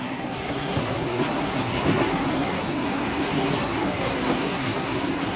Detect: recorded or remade remade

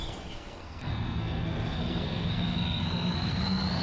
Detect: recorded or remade remade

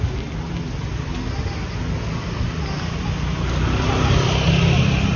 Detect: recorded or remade recorded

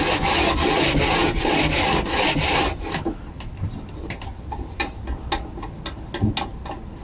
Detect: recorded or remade recorded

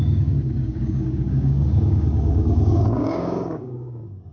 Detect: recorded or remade remade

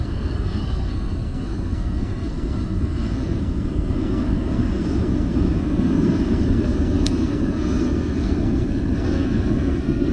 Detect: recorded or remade remade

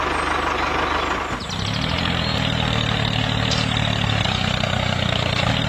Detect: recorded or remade recorded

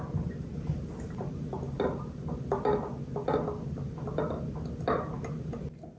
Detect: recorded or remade recorded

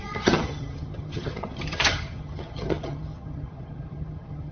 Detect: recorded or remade remade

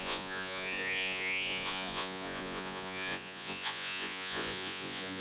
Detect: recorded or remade remade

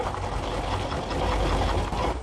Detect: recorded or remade recorded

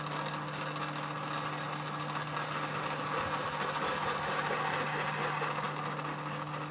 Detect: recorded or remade recorded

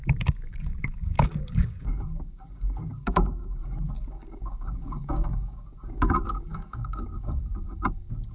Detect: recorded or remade remade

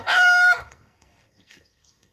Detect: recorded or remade remade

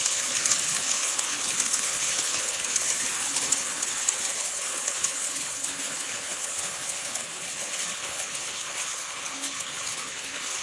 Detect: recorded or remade remade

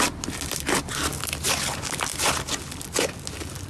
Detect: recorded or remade recorded